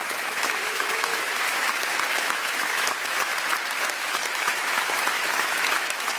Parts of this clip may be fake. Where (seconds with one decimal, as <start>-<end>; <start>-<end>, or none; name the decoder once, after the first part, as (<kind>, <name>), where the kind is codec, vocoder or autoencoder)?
0.0-3.3 (autoencoder, DAC-VAE); 3.8-6.2